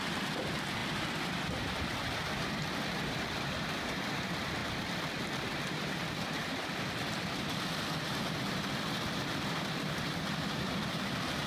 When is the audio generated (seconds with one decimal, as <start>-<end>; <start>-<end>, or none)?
none